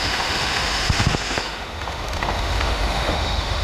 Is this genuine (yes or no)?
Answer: no